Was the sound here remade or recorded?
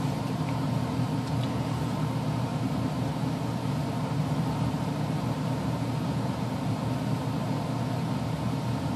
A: remade